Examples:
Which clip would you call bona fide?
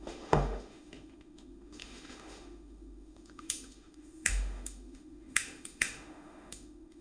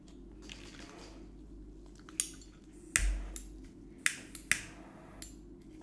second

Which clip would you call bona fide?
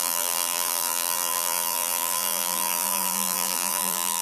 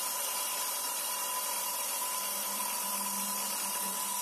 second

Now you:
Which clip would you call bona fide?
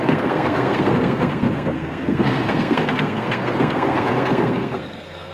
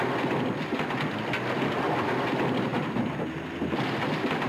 second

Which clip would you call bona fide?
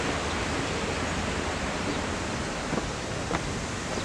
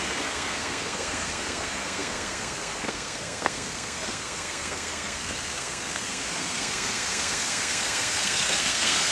first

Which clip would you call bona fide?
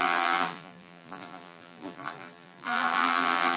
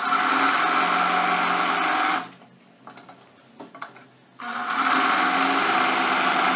second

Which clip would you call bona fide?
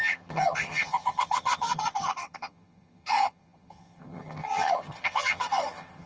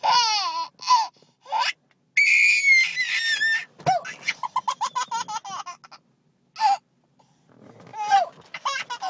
second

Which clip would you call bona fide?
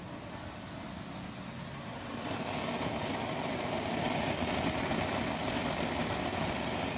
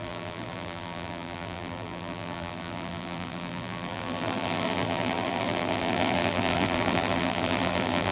first